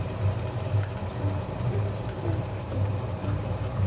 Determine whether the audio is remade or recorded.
remade